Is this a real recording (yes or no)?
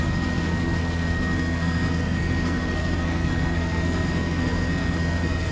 no